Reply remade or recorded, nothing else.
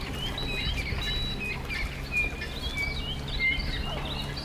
recorded